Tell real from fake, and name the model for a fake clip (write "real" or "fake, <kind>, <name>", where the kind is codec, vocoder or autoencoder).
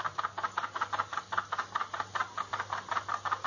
real